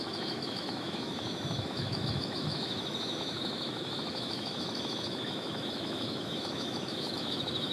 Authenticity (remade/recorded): remade